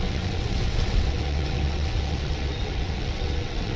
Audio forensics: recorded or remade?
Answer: remade